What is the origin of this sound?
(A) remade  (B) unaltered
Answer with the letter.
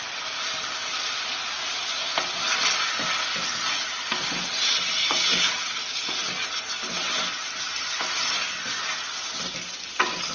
B